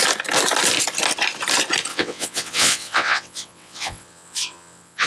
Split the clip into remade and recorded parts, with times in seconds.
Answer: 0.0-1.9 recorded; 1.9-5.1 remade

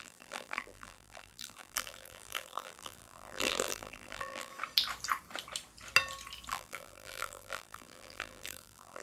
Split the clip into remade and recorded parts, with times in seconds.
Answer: 0.0-4.5 remade; 4.5-6.5 recorded; 6.5-9.0 remade